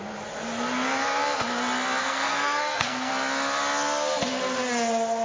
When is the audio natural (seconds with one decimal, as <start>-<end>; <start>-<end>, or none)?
0.0-2.0; 3.1-5.2